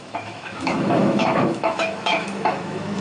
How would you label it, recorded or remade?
remade